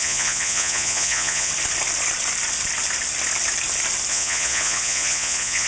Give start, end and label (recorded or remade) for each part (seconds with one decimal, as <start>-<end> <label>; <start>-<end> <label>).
0.0-1.5 remade; 1.5-4.1 recorded; 4.1-5.7 remade